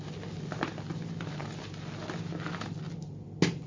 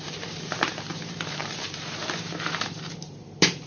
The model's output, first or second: second